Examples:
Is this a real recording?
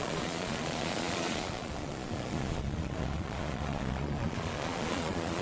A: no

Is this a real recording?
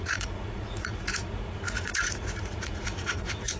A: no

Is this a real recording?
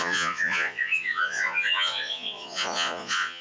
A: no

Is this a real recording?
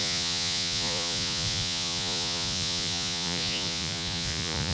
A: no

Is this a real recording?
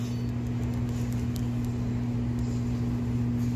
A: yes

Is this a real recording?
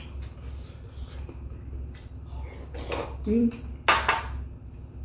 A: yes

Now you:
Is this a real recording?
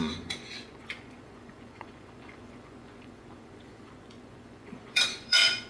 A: no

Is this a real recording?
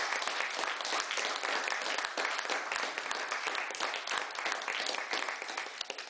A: yes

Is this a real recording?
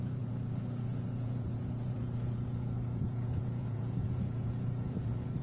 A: no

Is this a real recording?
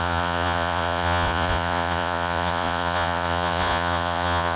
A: no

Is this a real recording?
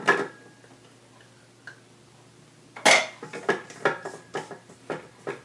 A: yes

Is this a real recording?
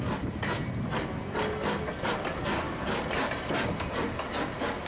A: yes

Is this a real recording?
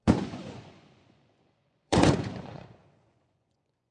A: no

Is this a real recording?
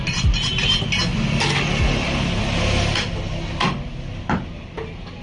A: yes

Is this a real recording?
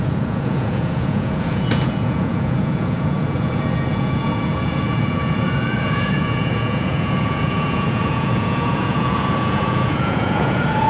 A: no